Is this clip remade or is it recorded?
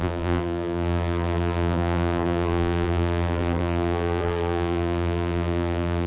remade